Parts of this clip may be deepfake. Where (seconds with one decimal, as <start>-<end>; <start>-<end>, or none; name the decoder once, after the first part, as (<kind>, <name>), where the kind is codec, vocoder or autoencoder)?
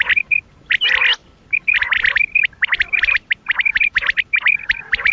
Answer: 1.2-3.9 (vocoder, BigVGAN v2)